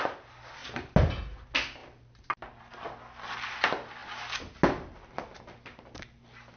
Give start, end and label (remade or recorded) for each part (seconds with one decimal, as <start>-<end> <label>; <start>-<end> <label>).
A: 0.0-6.6 recorded